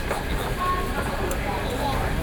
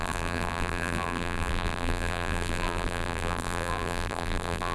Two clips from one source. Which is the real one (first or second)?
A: first